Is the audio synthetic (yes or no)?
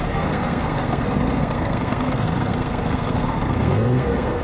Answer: yes